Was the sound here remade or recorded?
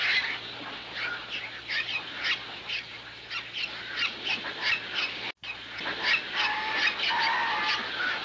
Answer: recorded